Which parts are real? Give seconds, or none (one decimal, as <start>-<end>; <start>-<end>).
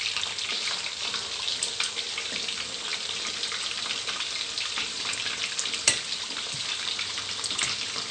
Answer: 0.0-8.1